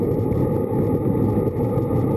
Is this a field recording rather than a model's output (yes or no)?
yes